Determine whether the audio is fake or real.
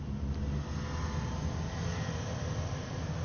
real